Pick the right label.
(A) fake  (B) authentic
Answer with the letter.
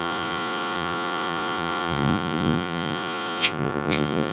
A